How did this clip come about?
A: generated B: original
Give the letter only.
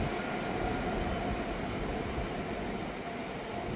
B